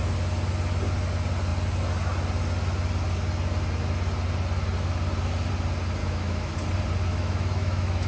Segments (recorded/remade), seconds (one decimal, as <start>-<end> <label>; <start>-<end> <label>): 0.0-6.0 recorded; 6.0-6.5 remade; 6.5-7.1 recorded; 7.1-8.1 remade

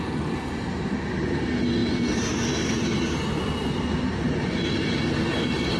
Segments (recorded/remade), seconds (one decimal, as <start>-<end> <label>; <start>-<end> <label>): 0.0-5.8 recorded

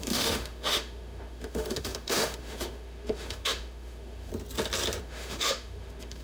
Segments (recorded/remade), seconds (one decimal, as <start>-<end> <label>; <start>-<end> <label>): 0.0-4.3 remade; 4.3-5.0 recorded; 5.0-6.2 remade

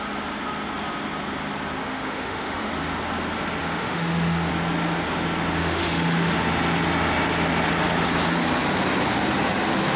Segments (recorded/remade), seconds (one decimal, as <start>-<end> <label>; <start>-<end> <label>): 0.0-1.8 recorded; 1.8-2.7 remade; 2.7-3.6 recorded; 3.6-4.5 remade; 4.5-5.6 recorded; 5.6-6.3 remade; 6.3-10.0 recorded

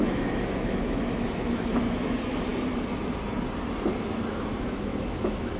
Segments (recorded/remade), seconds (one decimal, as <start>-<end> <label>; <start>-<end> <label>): 0.0-2.5 remade; 2.5-4.3 recorded; 4.3-5.6 remade

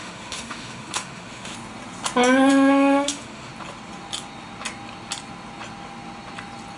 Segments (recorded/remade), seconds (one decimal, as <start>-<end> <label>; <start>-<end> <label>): 0.0-1.5 remade; 1.5-2.5 recorded; 2.5-3.5 remade; 3.5-6.8 recorded